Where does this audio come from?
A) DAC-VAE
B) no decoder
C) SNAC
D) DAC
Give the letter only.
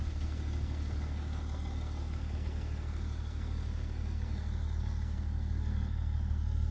C